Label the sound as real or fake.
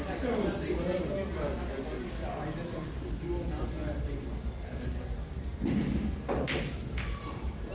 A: real